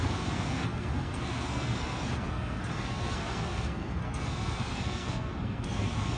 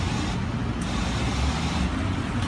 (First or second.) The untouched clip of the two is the second